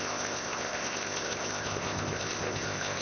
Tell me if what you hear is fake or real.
fake